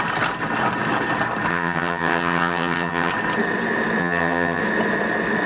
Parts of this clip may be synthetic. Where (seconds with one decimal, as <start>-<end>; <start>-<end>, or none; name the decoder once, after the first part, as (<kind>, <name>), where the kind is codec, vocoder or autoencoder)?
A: 1.5-3.1 (vocoder, HiFi-GAN); 4.0-4.6